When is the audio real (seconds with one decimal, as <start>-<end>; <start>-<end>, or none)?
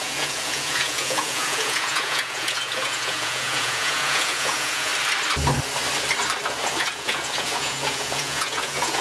4.9-6.8